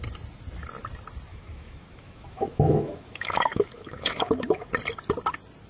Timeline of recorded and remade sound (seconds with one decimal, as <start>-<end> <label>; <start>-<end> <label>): 0.0-1.3 recorded; 1.3-4.7 remade; 4.7-5.7 recorded

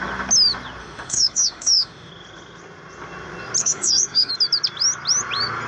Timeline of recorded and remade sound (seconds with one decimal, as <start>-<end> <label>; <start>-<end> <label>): 0.0-0.8 recorded; 0.8-2.1 remade; 2.1-3.6 recorded; 3.6-4.3 remade; 4.3-5.7 recorded

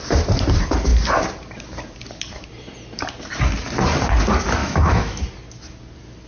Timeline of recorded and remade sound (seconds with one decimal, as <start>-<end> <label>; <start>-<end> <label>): 0.0-4.6 recorded; 4.6-5.2 remade; 5.2-6.3 recorded

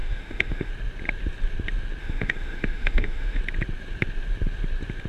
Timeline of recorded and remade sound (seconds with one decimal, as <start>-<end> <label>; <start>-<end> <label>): 0.0-0.7 remade; 0.7-2.0 recorded; 2.0-3.4 remade; 3.4-5.1 recorded

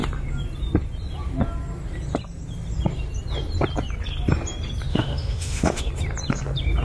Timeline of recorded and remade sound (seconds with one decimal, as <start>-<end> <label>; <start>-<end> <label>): 0.0-4.9 recorded; 4.9-5.9 remade; 5.9-6.8 recorded

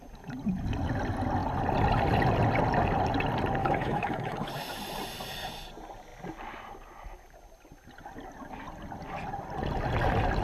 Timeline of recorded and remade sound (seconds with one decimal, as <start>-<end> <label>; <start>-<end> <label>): 0.0-3.6 recorded; 3.6-4.5 remade; 4.5-10.4 recorded

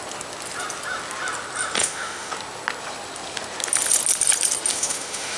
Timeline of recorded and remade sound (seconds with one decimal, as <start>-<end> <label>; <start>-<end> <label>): 0.0-1.8 recorded; 1.8-2.3 remade; 2.3-4.7 recorded; 4.7-5.4 remade

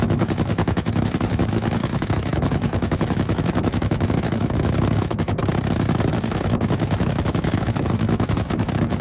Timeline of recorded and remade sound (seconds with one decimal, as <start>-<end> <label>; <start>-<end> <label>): 0.0-5.4 remade; 5.4-6.1 recorded; 6.1-9.0 remade